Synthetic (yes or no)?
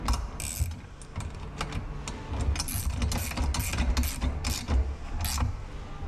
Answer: no